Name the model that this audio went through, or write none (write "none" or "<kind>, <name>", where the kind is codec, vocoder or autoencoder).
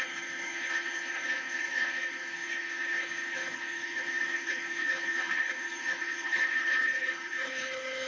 codec, HILCodec